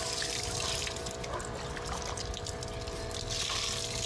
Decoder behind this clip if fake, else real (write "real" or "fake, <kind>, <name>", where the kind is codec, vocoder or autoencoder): real